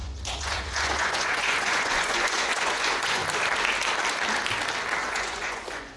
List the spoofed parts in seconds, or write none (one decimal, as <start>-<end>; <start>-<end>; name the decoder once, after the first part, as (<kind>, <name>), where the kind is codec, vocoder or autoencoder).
0.0-3.2 (vocoder, Vocos); 5.0-6.0

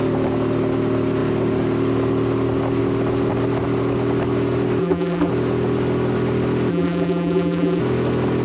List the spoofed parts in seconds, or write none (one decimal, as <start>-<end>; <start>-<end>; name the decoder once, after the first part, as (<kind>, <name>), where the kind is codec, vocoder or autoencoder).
4.8-5.3 (vocoder, BigVGAN v2); 6.7-7.8

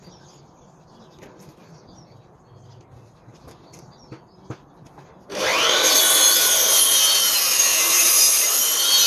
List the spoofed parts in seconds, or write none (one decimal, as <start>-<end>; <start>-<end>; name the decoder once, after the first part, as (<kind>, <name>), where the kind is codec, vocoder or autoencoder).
7.7-8.5 (vocoder, BigVGAN v2)

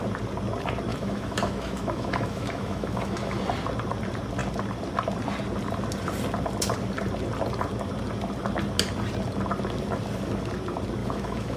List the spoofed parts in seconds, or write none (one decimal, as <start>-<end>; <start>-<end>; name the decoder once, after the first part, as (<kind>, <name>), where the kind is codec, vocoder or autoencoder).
0.9-3.4 (autoencoder, DAC-VAE); 11.0-11.6

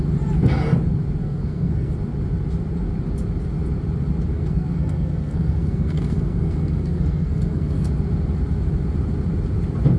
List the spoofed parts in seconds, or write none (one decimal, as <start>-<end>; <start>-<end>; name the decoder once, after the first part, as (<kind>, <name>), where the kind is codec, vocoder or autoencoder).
1.2-1.9 (codec, SNAC); 4.3-7.9

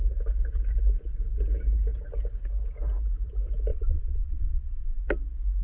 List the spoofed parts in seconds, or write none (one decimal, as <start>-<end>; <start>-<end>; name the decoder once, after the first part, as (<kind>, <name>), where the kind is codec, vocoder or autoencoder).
3.7-5.0 (vocoder, WaveNeXt)

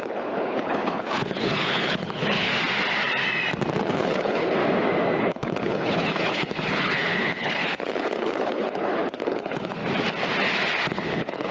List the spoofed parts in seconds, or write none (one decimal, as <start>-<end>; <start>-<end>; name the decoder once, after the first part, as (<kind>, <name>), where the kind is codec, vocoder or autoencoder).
0.0-2.5 (codec, HILCodec); 3.8-4.6; 5.2-9.8; 10.9-11.5